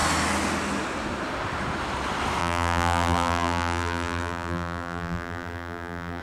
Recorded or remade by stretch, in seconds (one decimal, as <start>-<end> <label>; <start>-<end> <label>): 0.0-2.4 recorded; 2.4-6.2 remade